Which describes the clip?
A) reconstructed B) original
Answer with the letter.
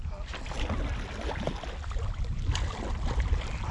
B